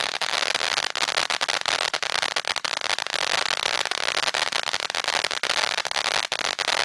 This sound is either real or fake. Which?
real